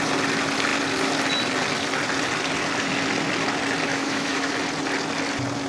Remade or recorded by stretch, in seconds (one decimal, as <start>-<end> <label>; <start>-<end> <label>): 0.0-3.9 recorded; 3.9-4.5 remade; 4.5-5.7 recorded

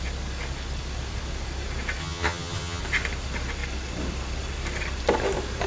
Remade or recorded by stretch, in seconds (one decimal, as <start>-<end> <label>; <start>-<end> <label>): 0.0-2.0 recorded; 2.0-2.8 remade; 2.8-5.7 recorded

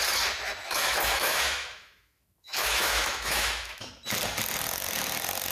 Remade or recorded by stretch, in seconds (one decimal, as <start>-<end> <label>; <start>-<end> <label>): 0.0-0.6 recorded; 0.6-3.9 remade; 3.9-5.5 recorded

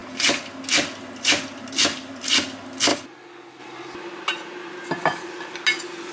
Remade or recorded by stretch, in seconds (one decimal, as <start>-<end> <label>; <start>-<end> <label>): 0.0-6.1 recorded

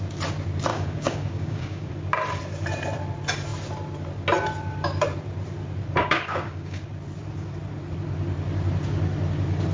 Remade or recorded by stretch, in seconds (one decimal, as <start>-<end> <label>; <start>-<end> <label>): 0.0-0.7 recorded; 0.7-1.9 remade; 1.9-6.0 recorded; 6.0-6.8 remade; 6.8-9.7 recorded